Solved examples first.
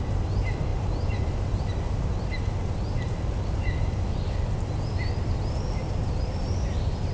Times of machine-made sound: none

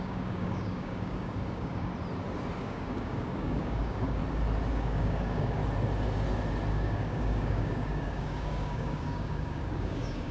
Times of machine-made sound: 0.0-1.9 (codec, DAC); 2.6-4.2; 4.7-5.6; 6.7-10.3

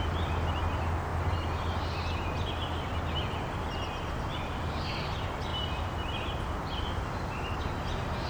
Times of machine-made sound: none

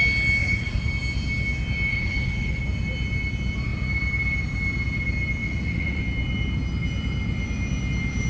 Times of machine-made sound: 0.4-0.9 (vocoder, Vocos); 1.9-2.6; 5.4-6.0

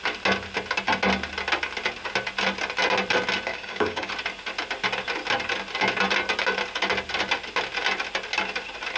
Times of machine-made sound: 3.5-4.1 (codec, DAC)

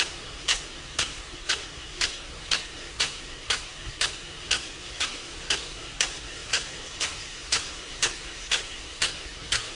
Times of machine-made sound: 0.0-9.7 (codec, SNAC)

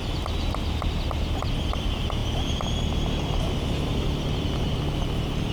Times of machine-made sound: none

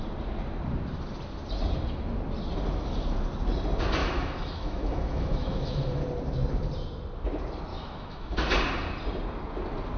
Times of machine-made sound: 4.0-6.0 (autoencoder, DAC-VAE); 7.7-8.3